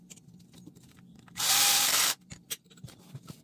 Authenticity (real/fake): fake